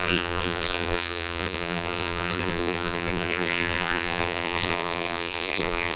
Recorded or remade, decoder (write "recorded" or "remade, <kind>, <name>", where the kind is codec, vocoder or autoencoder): remade, vocoder, BigVGAN v2